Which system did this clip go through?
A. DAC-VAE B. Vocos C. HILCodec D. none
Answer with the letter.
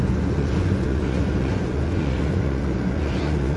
B